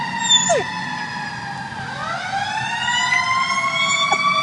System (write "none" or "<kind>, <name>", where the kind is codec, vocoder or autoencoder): none